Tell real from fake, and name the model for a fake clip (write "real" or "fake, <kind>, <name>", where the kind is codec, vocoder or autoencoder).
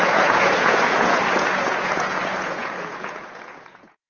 fake, vocoder, Vocos